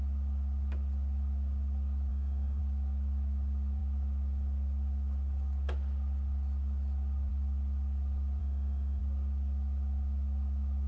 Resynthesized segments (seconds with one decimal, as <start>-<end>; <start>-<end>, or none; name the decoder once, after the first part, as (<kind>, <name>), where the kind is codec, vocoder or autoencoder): 2.1-2.6 (autoencoder, DAC-VAE); 8.4-9.0

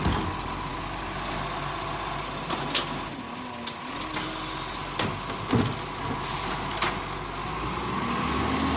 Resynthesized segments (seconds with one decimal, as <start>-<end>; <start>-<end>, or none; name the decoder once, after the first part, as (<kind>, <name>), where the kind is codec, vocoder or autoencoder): none